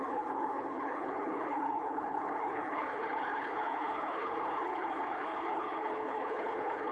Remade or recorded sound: remade